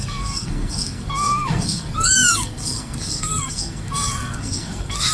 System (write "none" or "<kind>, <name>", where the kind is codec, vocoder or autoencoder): codec, SNAC